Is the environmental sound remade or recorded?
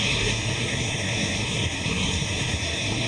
remade